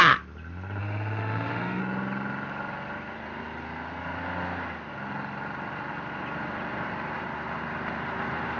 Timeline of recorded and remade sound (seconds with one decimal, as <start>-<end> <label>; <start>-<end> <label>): 0.0-0.8 recorded; 0.8-1.8 remade; 1.8-8.6 recorded